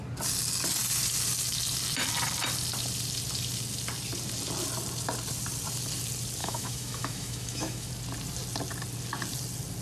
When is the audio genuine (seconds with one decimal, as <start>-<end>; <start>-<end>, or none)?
0.0-6.4; 7.9-9.8